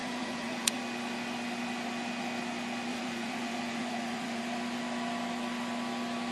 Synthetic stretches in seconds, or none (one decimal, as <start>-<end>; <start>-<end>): 0.0-0.8; 2.9-4.4